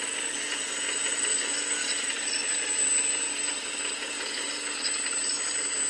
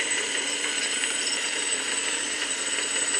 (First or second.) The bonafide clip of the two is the first